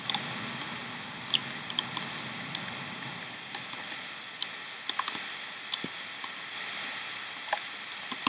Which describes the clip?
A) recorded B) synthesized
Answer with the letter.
A